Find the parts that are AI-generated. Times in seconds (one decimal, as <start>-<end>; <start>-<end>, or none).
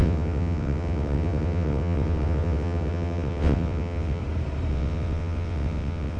0.0-4.2; 4.7-6.2